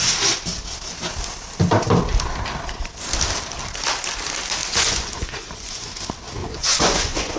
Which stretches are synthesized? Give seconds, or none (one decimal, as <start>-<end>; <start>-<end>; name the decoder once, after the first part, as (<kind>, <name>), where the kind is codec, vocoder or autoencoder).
4.6-5.9 (vocoder, Vocos); 6.4-7.4